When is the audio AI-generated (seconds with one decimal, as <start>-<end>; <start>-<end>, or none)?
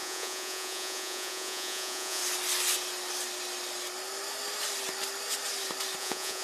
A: 0.0-2.2; 6.0-6.4